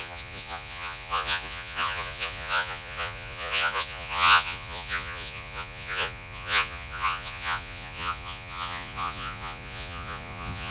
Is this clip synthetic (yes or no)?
yes